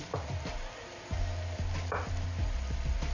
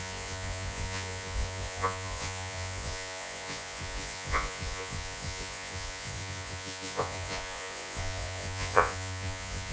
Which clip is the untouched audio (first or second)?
first